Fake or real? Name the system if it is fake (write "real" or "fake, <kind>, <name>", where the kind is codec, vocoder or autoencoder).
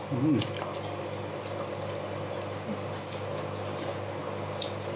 real